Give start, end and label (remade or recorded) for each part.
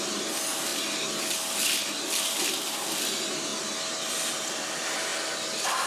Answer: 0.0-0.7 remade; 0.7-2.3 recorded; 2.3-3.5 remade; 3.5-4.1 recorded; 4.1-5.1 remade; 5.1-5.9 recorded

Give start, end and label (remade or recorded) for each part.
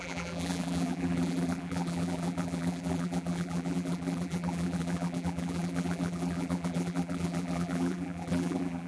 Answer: 0.0-8.9 remade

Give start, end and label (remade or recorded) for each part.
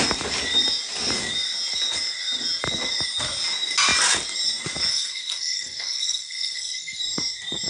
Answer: 0.0-4.9 recorded; 4.9-7.0 remade; 7.0-7.7 recorded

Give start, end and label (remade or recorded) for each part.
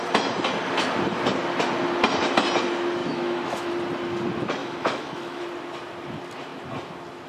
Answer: 0.0-3.0 recorded; 3.0-3.7 remade; 3.7-4.6 recorded; 4.6-5.4 remade; 5.4-7.3 recorded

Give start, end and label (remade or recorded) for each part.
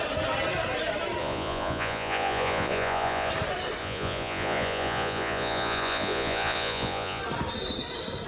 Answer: 0.0-1.2 recorded; 1.2-3.3 remade; 3.3-3.8 recorded; 3.8-7.2 remade; 7.2-8.3 recorded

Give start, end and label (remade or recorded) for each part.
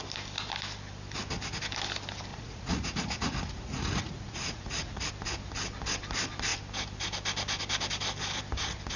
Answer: 0.0-2.3 recorded; 2.3-5.1 remade; 5.1-9.0 recorded